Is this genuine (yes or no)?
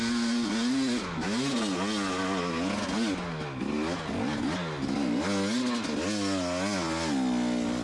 yes